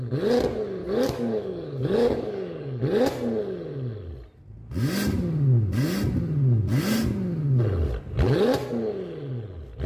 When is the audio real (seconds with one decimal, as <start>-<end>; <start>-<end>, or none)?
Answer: 0.0-0.8; 2.8-9.9